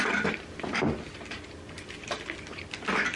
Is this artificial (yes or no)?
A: no